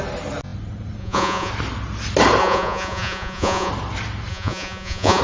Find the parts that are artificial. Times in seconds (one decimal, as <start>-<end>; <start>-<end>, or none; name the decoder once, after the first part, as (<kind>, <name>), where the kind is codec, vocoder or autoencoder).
1.0-1.5 (vocoder, Vocos); 2.4-3.7; 4.3-5.2